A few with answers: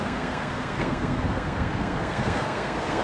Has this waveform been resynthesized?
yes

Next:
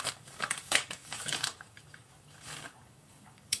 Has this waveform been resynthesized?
yes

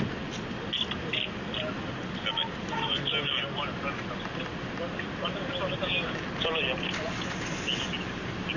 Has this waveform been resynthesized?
no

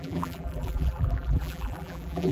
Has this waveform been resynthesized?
yes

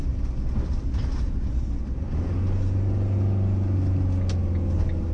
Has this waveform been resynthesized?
no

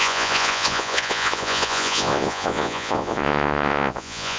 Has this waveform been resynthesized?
yes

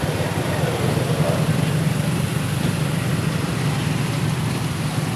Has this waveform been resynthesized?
no